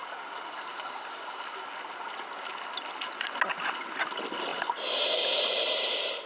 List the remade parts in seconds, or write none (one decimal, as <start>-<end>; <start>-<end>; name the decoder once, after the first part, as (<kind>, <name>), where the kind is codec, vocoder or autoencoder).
none